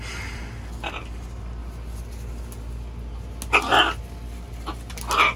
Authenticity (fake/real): real